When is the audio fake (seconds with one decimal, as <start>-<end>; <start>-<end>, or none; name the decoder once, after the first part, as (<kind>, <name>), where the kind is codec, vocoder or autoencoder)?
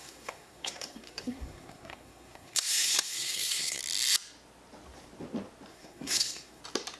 0.0-3.8 (codec, SNAC); 5.7-6.6